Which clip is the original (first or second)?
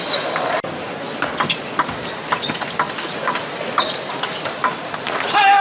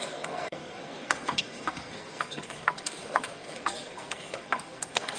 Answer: first